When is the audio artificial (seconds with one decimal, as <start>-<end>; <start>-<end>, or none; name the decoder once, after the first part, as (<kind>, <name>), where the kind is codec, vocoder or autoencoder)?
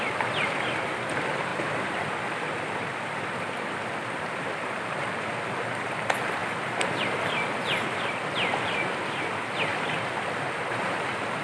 none